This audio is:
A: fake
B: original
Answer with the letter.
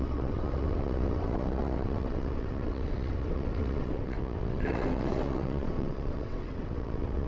A